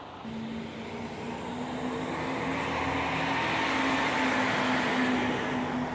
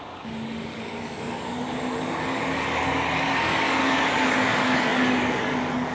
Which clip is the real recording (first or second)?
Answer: first